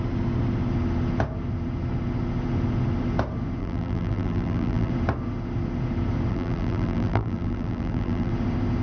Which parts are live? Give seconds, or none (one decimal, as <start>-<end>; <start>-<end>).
0.0-3.6; 4.9-6.3; 8.3-8.8